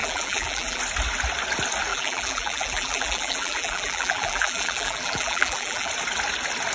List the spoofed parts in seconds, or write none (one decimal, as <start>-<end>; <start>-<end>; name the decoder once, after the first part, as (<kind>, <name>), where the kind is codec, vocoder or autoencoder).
0.0-0.8 (vocoder, BigVGAN v2); 1.9-5.9